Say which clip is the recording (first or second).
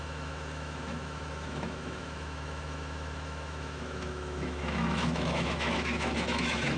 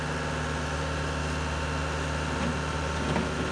second